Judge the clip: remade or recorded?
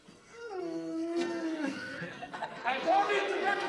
remade